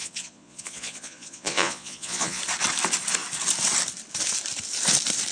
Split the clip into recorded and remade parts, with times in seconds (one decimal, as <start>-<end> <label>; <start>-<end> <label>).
0.0-2.4 remade; 2.4-5.3 recorded